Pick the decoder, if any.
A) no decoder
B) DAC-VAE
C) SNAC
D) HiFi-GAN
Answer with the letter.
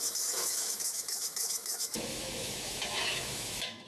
B